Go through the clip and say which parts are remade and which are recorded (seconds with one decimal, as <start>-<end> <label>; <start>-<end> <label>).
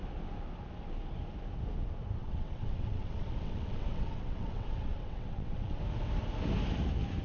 0.0-2.2 recorded; 2.2-5.8 remade; 5.8-7.2 recorded